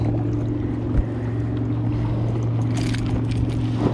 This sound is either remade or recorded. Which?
recorded